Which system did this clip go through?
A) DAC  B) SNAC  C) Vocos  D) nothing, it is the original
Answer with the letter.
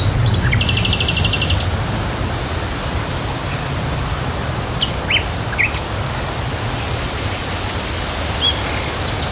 D